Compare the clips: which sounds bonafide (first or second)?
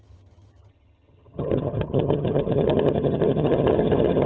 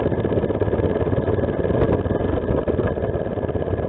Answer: second